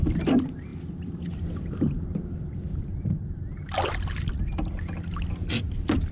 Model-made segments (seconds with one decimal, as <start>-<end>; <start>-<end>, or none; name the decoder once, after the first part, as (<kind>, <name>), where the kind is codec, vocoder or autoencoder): 0.0-2.9 (vocoder, BigVGAN v2); 5.6-6.1